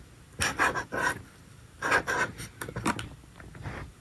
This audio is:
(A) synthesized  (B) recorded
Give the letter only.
B